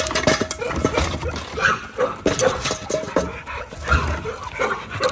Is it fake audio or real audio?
real